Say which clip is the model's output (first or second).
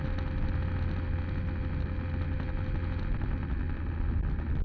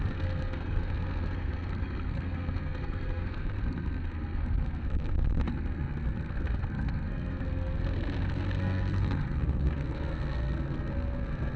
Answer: second